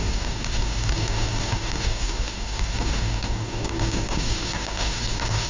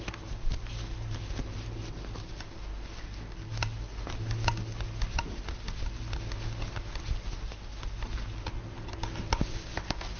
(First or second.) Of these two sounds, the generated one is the first